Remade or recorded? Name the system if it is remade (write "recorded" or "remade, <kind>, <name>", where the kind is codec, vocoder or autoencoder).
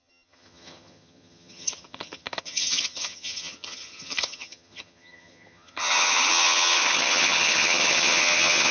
remade, vocoder, HiFi-GAN